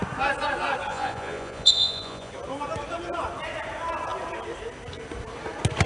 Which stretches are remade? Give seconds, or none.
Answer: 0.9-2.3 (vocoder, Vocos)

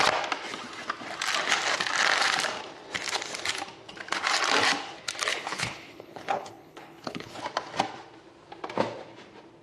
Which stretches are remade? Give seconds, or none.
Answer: 5.3-7.4 (codec, HILCodec)

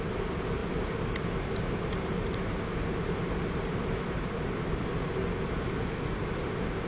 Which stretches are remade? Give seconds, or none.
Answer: none

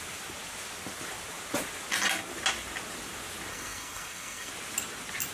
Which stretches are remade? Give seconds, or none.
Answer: 3.5-4.5 (codec, SNAC)

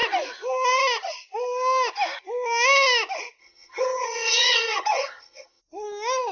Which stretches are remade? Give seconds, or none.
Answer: 3.4-5.6 (vocoder, HiFi-GAN)